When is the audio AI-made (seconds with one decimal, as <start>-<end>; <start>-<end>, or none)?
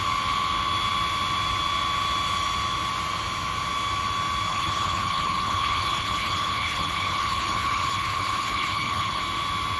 4.5-9.2